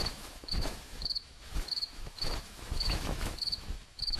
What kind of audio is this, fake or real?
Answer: fake